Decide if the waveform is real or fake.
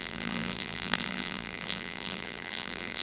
fake